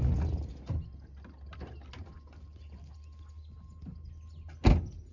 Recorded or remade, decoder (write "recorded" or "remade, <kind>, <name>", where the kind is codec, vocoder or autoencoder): recorded